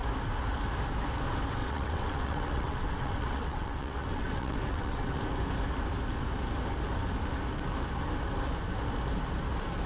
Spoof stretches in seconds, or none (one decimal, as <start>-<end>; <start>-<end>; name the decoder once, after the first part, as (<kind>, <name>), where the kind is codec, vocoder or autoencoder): 1.6-5.2 (vocoder, WaveNeXt)